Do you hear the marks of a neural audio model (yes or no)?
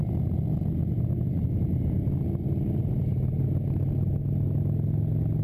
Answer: no